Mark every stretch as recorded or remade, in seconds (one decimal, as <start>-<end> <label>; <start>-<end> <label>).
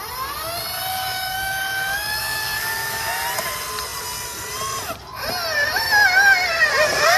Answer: 0.0-0.9 recorded; 0.9-3.1 remade; 3.1-7.2 recorded